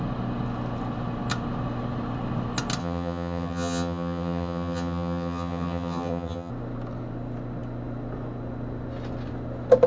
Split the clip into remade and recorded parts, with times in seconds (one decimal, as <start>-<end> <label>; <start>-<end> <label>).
0.0-2.8 recorded; 2.8-6.5 remade; 6.5-9.9 recorded